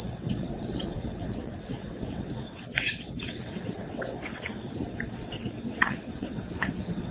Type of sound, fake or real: fake